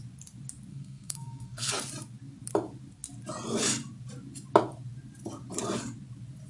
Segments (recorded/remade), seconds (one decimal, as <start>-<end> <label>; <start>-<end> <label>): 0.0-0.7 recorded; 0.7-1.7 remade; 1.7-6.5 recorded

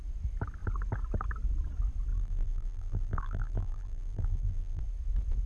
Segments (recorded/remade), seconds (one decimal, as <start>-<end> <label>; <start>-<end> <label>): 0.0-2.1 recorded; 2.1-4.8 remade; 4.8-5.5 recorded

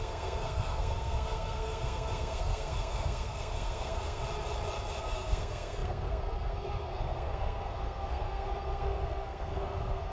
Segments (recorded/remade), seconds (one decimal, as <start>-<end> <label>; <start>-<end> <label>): 0.0-4.2 remade; 4.2-5.0 recorded; 5.0-10.1 remade